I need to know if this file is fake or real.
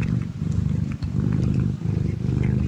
real